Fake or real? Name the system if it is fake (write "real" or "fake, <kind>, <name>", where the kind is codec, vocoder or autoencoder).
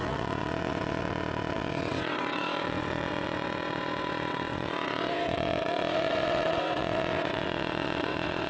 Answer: fake, vocoder, WaveNeXt